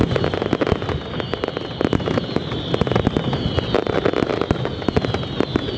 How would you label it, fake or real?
real